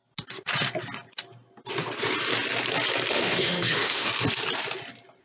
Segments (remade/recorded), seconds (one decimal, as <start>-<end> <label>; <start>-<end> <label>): 0.0-3.1 recorded; 3.1-4.1 remade; 4.1-5.2 recorded

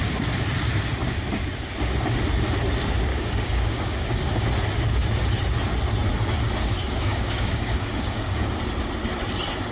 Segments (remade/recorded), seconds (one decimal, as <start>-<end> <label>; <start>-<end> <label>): 0.0-3.1 recorded; 3.1-4.5 remade; 4.5-6.8 recorded; 6.8-8.6 remade; 8.6-9.7 recorded

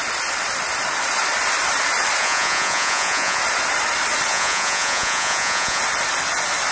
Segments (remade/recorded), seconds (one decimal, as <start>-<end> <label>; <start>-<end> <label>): 0.0-2.2 recorded; 2.2-3.4 remade; 3.4-4.3 recorded; 4.3-5.8 remade; 5.8-6.7 recorded